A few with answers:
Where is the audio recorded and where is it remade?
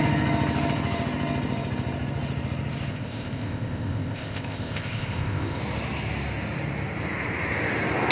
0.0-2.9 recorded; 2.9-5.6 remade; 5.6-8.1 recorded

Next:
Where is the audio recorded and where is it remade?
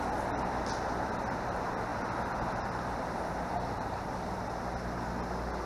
0.0-1.9 recorded; 1.9-4.5 remade; 4.5-5.7 recorded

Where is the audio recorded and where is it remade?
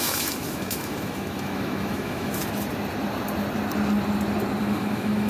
0.0-2.4 remade; 2.4-4.6 recorded; 4.6-5.3 remade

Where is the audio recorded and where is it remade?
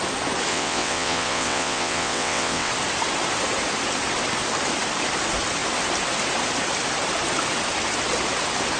0.0-0.5 recorded; 0.5-2.7 remade; 2.7-8.8 recorded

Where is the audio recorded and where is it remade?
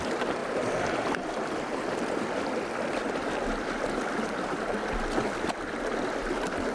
0.0-6.7 recorded